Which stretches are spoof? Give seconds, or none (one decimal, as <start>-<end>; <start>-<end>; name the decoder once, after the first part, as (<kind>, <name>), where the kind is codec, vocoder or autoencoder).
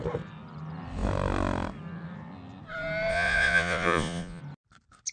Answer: 3.1-4.4 (vocoder, Vocos)